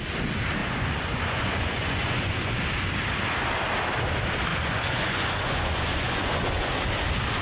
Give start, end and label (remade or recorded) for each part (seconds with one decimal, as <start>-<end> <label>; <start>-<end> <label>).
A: 0.0-0.6 recorded; 0.6-2.5 remade; 2.5-4.5 recorded; 4.5-6.7 remade; 6.7-7.4 recorded